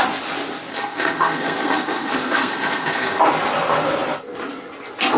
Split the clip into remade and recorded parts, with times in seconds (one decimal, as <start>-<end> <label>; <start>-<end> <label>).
0.0-0.7 recorded; 0.7-3.2 remade; 3.2-5.2 recorded